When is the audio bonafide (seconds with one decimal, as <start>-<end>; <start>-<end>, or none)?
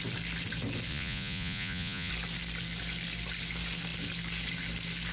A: 0.0-0.9; 2.1-5.1